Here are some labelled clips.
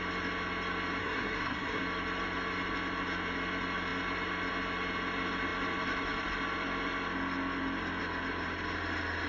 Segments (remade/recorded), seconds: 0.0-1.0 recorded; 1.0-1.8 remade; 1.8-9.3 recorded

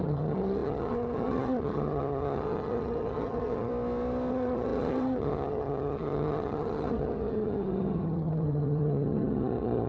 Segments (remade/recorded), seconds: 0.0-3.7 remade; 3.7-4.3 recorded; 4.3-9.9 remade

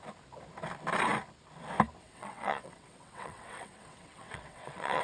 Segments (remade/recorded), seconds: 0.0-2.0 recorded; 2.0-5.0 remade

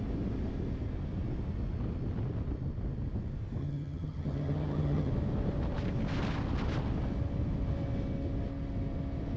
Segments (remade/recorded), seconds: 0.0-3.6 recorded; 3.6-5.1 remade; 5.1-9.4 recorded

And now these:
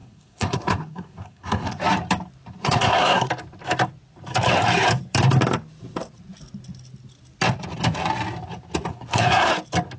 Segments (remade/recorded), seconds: 0.0-1.8 remade; 1.8-2.6 recorded; 2.6-3.3 remade; 3.3-8.9 recorded; 8.9-9.5 remade; 9.5-10.0 recorded